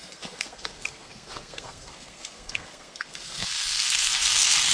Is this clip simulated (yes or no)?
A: yes